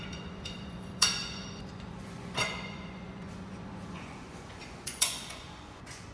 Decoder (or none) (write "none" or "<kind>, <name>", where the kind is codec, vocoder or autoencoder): vocoder, Vocos